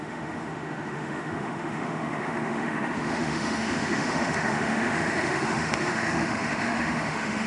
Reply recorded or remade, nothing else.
remade